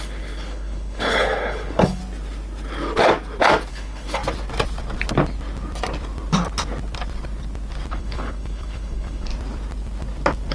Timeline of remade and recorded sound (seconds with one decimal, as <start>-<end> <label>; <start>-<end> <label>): 0.0-2.0 remade; 2.0-3.7 recorded; 3.7-4.2 remade; 4.2-7.9 recorded; 7.9-9.3 remade; 9.3-10.5 recorded